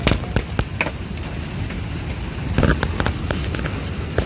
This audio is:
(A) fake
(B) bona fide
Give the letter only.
B